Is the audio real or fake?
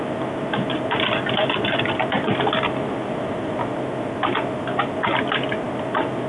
real